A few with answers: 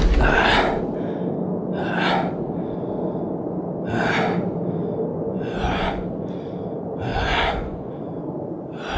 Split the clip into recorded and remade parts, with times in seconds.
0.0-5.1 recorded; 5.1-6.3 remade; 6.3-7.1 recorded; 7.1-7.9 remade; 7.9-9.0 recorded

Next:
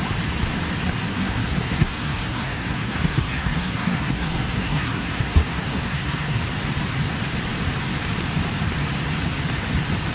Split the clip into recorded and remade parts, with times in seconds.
0.0-1.1 recorded; 1.1-6.4 remade; 6.4-10.1 recorded